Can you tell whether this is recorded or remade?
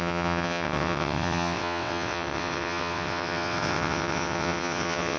remade